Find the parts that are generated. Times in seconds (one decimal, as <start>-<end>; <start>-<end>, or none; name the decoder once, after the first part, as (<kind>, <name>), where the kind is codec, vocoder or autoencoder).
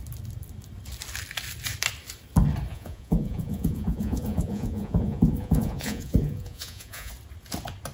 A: 2.7-7.1 (vocoder, Vocos)